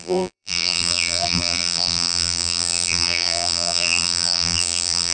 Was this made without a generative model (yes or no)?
no